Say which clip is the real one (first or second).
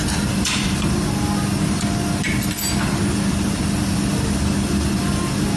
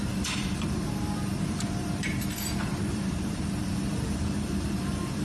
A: first